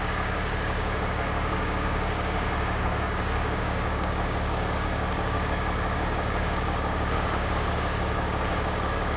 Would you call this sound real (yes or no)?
no